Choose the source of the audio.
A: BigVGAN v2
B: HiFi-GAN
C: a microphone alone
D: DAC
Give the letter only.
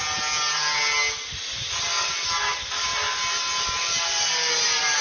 C